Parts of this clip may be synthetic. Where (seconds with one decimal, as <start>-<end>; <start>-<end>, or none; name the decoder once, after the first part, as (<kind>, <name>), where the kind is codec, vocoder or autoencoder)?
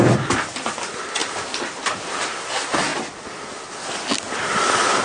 none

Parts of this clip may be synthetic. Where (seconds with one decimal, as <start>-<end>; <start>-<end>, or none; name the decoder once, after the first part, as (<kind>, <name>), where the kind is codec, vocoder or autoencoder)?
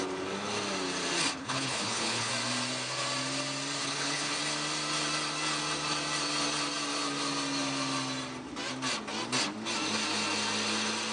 1.4-2.3 (codec, HILCodec); 3.8-4.4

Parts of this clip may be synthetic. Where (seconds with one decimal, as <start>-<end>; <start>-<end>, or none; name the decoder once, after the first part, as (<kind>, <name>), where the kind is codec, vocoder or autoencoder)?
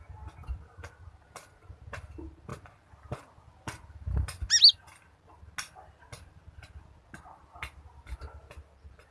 none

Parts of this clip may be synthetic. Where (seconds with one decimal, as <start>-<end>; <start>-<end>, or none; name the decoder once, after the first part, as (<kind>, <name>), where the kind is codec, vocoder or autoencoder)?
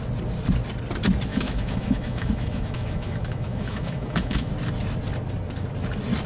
1.3-4.5 (autoencoder, DAC-VAE)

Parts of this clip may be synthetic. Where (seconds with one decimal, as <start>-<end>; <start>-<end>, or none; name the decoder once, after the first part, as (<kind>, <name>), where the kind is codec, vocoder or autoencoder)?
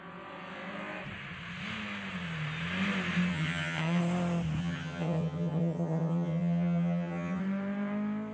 3.3-4.0 (vocoder, HiFi-GAN); 4.6-7.4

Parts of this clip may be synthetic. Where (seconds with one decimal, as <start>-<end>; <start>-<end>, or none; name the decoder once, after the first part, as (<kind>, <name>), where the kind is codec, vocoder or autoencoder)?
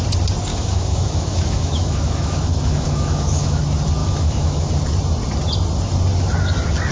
0.5-3.6 (autoencoder, DAC-VAE); 4.0-4.7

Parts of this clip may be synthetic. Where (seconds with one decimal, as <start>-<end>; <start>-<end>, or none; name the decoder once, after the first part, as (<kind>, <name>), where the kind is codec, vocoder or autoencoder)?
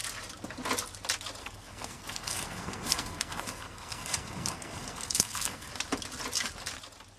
1.4-5.7 (codec, SNAC)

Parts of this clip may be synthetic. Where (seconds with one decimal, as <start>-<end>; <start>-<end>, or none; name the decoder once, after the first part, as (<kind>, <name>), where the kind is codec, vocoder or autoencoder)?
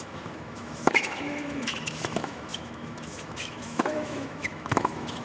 0.0-5.2 (autoencoder, DAC-VAE)